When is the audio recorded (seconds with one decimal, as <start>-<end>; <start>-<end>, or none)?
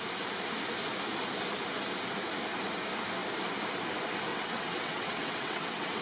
0.0-4.3